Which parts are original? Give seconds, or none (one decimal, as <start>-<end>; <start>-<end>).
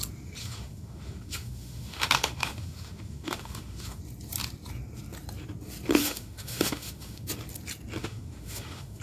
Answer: 0.0-0.4; 4.0-6.0; 7.3-8.0